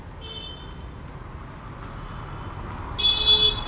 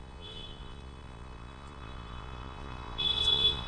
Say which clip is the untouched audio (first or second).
first